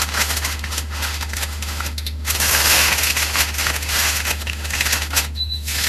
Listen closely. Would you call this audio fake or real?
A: fake